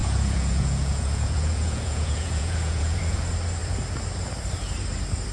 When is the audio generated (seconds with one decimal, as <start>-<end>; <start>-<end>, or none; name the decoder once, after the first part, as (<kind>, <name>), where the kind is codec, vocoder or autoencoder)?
0.0-3.2 (vocoder, Vocos)